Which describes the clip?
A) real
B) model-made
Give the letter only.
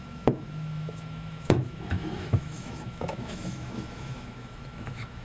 B